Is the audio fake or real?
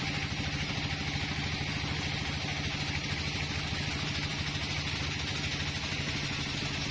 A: real